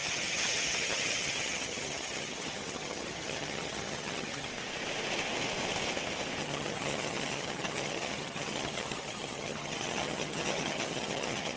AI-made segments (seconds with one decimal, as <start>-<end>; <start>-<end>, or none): 0.0-4.5; 6.4-11.6